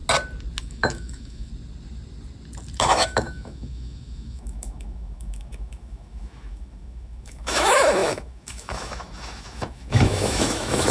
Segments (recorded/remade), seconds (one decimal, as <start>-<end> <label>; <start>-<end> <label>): 0.0-0.6 recorded; 0.6-1.5 remade; 1.5-2.8 recorded; 2.8-10.9 remade